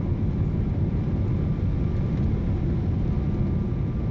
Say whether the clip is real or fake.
real